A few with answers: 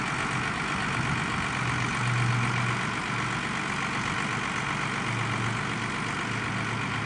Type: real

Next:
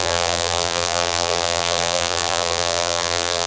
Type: fake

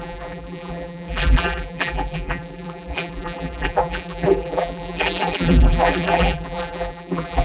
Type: fake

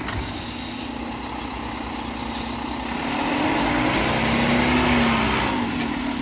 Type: real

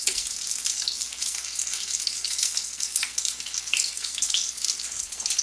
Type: fake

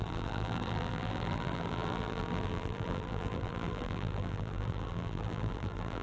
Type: fake